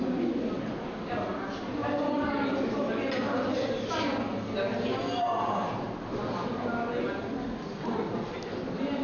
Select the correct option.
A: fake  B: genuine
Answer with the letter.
B